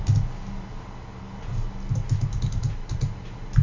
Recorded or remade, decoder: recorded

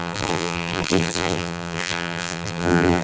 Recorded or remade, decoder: remade, vocoder, BigVGAN v2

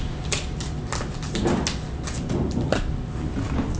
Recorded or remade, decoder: recorded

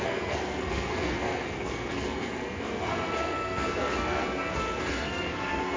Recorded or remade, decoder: remade, codec, SNAC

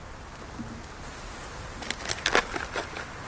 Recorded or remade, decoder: recorded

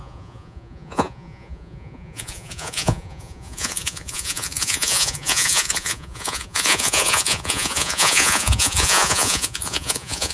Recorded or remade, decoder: remade, vocoder, Vocos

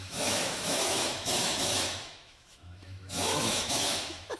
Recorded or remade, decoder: remade, autoencoder, DAC-VAE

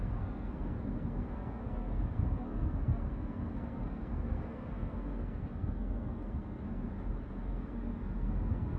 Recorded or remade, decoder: remade, codec, SNAC